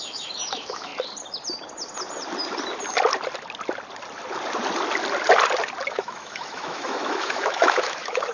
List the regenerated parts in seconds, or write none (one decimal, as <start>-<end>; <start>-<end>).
0.0-0.9; 5.9-8.3